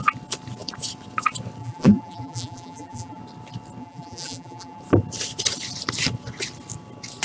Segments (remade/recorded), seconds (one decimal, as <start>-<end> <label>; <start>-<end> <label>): 0.0-1.6 recorded; 1.6-3.2 remade; 3.2-3.8 recorded; 3.8-4.8 remade; 4.8-7.2 recorded